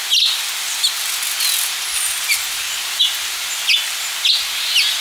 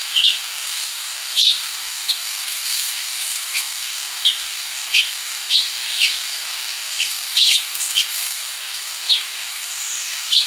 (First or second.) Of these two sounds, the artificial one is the second